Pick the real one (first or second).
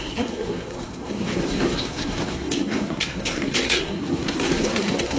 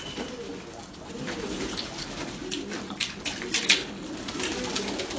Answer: second